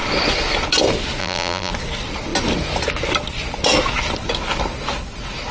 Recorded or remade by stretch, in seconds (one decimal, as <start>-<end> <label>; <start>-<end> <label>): 0.0-1.2 recorded; 1.2-1.7 remade; 1.7-5.5 recorded